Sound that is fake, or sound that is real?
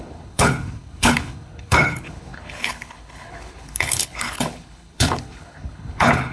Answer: fake